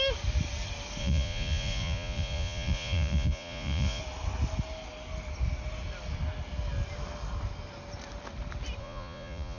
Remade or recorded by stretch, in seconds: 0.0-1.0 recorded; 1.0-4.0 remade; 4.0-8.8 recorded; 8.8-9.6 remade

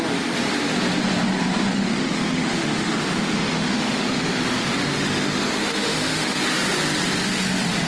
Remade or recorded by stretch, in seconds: 0.0-1.7 recorded; 1.7-6.4 remade; 6.4-7.9 recorded

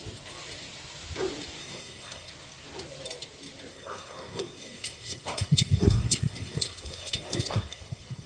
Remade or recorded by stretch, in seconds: 0.0-1.6 recorded; 1.6-2.3 remade; 2.3-3.7 recorded; 3.7-8.3 remade